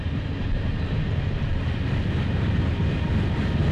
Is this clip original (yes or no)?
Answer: yes